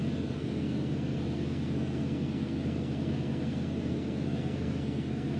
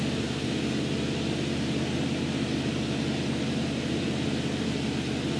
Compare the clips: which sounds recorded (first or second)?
second